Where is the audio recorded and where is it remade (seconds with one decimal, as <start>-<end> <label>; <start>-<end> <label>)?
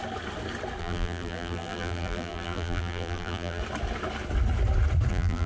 0.0-0.8 recorded; 0.8-3.6 remade; 3.6-5.1 recorded; 5.1-5.5 remade